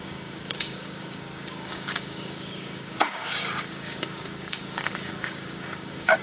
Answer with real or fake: fake